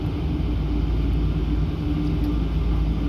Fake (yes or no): no